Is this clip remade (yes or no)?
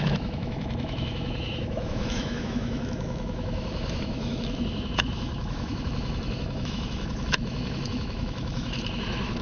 yes